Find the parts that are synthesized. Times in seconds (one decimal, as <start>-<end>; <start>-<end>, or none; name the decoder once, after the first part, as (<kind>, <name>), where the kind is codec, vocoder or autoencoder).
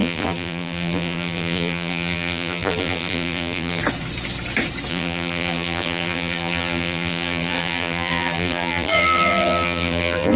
0.0-3.8 (vocoder, BigVGAN v2); 4.9-10.4